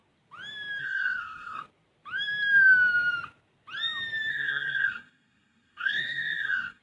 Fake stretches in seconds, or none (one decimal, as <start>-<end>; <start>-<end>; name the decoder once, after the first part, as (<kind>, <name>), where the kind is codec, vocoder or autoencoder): 0.8-1.6 (codec, SNAC); 4.3-6.8